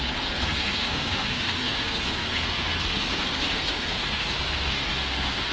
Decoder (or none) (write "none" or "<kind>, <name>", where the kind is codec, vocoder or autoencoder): codec, SNAC